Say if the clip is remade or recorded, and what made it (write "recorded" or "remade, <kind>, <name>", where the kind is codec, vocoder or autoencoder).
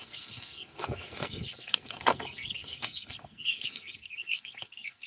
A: remade, codec, SNAC